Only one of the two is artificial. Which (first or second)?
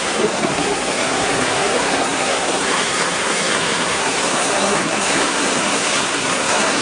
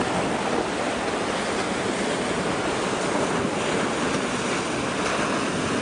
first